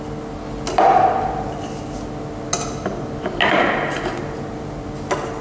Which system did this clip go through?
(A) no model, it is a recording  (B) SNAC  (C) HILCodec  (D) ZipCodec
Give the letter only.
A